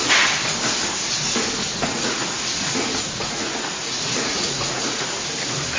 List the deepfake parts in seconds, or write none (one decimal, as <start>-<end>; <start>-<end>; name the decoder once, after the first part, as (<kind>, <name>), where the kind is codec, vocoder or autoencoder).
1.7-5.2 (vocoder, Vocos)